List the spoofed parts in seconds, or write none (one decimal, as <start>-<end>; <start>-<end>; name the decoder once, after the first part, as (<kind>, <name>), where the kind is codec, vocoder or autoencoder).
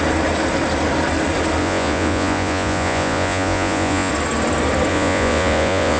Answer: 1.6-4.1 (vocoder, Vocos); 4.9-6.0